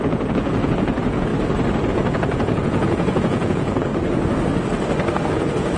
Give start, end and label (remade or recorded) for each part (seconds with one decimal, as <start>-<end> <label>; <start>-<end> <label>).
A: 0.0-1.3 remade; 1.3-1.9 recorded; 1.9-3.9 remade; 3.9-5.3 recorded; 5.3-5.8 remade